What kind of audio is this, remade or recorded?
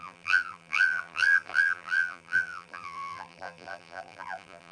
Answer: remade